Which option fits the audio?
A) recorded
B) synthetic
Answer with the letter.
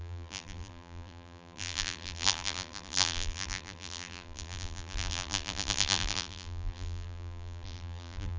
B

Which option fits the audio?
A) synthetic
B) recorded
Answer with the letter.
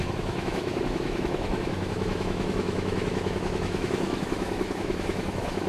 A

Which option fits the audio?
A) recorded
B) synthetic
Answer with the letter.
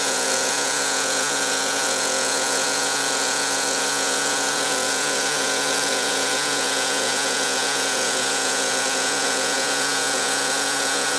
B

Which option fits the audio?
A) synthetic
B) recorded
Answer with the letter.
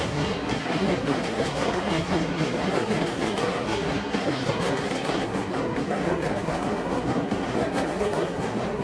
A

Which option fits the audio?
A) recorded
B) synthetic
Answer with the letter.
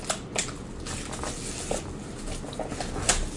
A